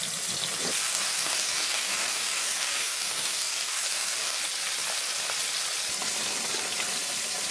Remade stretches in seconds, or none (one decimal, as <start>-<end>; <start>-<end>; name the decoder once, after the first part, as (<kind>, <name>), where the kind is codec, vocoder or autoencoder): 0.8-4.4 (codec, DAC)